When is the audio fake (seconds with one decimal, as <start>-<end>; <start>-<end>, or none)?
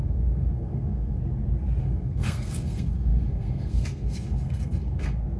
0.0-1.2; 1.8-5.4